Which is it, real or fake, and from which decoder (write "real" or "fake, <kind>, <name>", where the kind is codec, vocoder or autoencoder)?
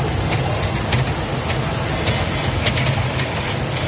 real